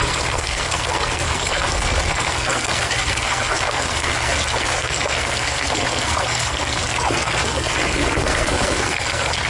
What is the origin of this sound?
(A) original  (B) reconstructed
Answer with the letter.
B